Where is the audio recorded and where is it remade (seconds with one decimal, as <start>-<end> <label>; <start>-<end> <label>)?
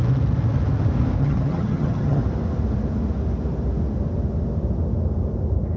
0.0-1.2 recorded; 1.2-2.2 remade; 2.2-5.8 recorded